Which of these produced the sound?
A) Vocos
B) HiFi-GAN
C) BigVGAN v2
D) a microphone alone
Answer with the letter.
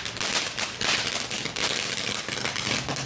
D